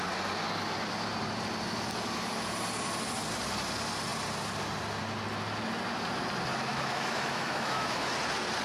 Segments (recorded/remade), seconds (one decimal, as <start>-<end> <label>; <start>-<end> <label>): 0.0-6.7 recorded; 6.7-8.1 remade; 8.1-8.6 recorded

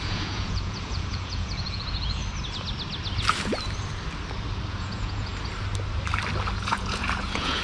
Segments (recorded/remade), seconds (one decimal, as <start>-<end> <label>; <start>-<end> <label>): 0.0-2.2 remade; 2.2-4.7 recorded; 4.7-5.3 remade; 5.3-6.6 recorded; 6.6-7.6 remade

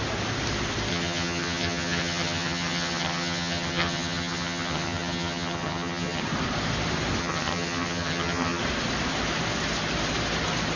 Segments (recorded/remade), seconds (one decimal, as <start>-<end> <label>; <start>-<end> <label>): 0.0-0.9 recorded; 0.9-6.2 remade; 6.2-7.2 recorded; 7.2-8.6 remade; 8.6-10.8 recorded